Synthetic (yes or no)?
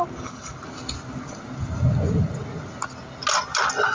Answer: no